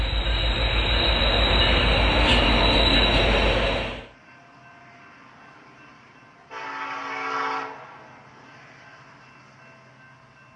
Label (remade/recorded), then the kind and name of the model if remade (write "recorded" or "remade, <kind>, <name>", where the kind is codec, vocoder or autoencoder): recorded